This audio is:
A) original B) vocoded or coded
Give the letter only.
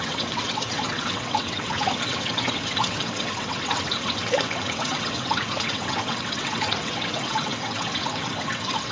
B